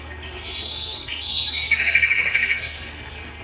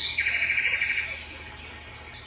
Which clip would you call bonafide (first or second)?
second